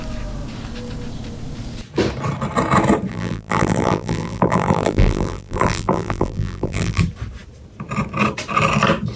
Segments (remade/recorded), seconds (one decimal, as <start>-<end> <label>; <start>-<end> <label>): 0.0-3.1 recorded; 3.1-7.0 remade; 7.0-9.2 recorded